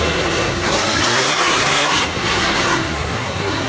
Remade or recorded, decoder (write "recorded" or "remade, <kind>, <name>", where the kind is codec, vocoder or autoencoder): remade, codec, SNAC